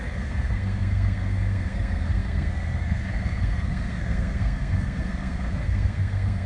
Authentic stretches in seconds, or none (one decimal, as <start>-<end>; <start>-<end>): none